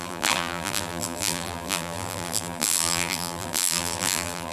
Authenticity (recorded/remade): remade